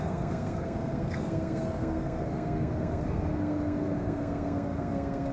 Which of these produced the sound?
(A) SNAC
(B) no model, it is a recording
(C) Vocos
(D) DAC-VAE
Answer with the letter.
A